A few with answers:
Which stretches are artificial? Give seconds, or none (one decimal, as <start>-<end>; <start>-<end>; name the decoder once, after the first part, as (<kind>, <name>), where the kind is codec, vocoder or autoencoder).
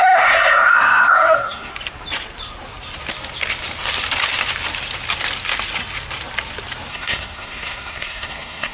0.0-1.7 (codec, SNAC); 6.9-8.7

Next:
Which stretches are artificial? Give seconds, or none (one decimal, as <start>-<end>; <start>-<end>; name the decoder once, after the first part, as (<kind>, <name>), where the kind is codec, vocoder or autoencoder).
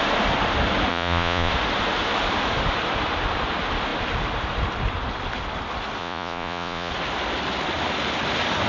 0.9-1.5 (vocoder, Vocos); 6.0-6.9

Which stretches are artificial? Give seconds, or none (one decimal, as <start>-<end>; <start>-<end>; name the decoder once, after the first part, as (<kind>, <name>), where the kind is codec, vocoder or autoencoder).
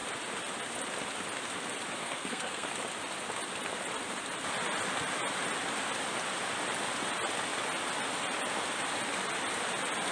2.0-2.7 (codec, SNAC)